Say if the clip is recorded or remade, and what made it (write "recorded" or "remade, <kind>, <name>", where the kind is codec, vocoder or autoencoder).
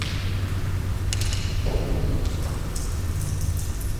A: recorded